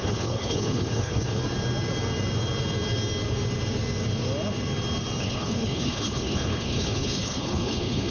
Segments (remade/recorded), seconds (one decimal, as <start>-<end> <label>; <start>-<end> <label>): 0.0-1.4 remade; 1.4-5.2 recorded; 5.2-8.1 remade

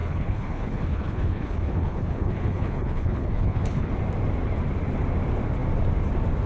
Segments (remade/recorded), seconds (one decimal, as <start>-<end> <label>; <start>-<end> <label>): 0.0-3.9 remade; 3.9-6.5 recorded

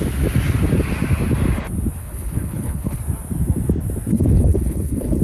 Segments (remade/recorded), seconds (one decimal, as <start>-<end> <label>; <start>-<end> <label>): 0.0-2.0 recorded; 2.0-3.0 remade; 3.0-4.1 recorded; 4.1-5.2 remade

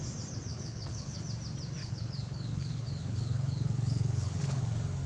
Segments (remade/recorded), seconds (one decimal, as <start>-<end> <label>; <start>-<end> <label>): 0.0-0.5 recorded; 0.5-1.2 remade; 1.2-1.8 recorded; 1.8-4.6 remade; 4.6-5.1 recorded

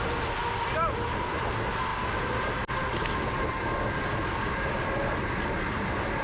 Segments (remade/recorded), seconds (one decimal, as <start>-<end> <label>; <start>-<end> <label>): 0.0-6.2 recorded

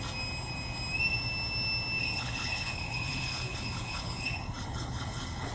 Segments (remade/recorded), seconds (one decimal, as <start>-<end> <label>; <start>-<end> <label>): 0.0-2.0 recorded; 2.0-5.5 remade

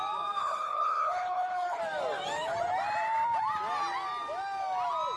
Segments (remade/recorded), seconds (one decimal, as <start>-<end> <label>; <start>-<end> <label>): 0.0-0.4 recorded; 0.4-1.8 remade; 1.8-5.2 recorded